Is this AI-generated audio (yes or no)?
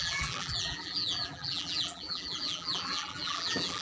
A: yes